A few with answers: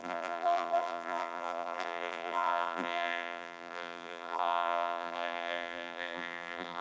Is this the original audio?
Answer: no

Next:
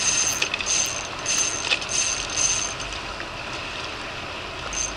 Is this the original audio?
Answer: yes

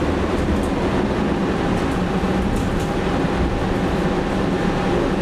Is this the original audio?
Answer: yes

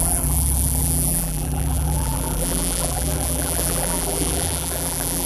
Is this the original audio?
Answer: no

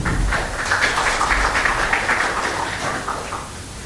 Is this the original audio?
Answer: yes